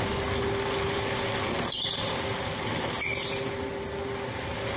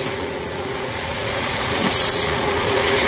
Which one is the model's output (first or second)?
second